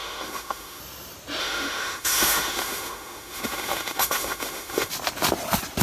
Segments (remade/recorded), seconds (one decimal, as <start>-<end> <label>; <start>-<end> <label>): 0.0-0.8 remade; 0.8-1.4 recorded; 1.4-4.9 remade; 4.9-5.8 recorded